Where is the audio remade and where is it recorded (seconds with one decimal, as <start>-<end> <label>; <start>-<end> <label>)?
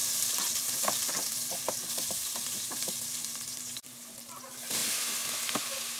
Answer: 0.0-4.8 remade; 4.8-5.6 recorded; 5.6-6.0 remade